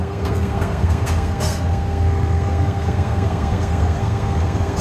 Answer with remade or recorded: remade